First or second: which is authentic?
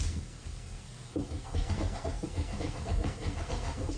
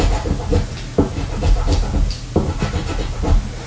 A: second